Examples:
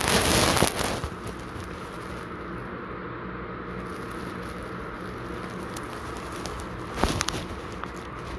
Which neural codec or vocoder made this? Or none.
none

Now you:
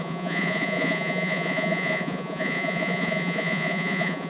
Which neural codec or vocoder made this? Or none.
vocoder, Vocos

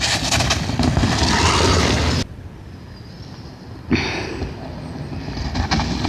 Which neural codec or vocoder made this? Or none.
none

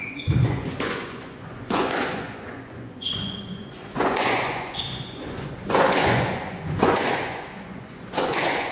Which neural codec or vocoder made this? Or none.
vocoder, Vocos